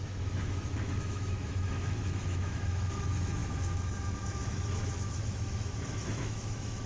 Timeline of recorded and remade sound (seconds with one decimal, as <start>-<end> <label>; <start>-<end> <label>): 0.0-3.4 remade; 3.4-4.5 recorded; 4.5-6.9 remade